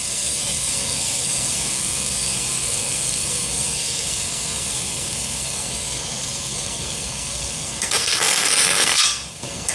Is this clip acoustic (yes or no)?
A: no